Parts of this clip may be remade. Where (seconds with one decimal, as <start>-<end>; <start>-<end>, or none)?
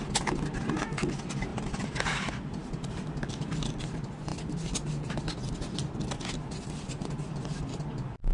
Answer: 1.5-2.0; 2.6-3.3